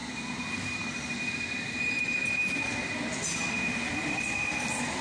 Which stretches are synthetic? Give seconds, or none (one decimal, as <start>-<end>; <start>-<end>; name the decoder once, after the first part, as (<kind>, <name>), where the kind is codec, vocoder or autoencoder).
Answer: none